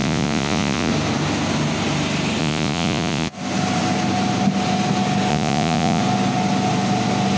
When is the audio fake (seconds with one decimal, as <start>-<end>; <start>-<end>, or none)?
0.0-0.9; 2.4-3.3; 5.3-6.0